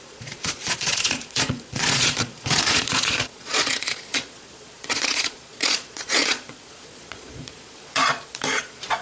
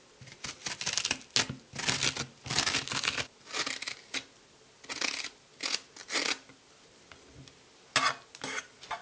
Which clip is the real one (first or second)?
second